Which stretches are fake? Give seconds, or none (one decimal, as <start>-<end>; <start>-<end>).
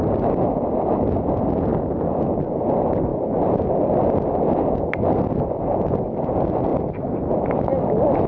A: none